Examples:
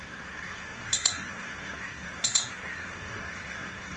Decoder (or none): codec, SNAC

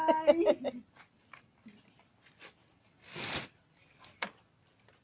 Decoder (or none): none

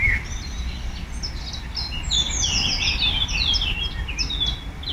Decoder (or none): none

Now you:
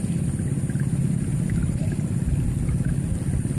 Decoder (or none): none